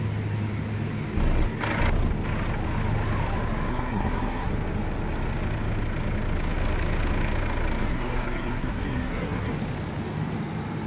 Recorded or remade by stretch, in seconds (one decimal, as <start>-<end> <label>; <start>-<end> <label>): 0.0-3.7 recorded; 3.7-4.5 remade; 4.5-7.8 recorded; 7.8-9.5 remade; 9.5-10.9 recorded